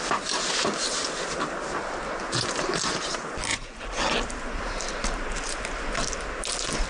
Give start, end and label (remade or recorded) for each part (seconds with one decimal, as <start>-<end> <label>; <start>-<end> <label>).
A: 0.0-3.5 recorded; 3.5-4.0 remade; 4.0-6.9 recorded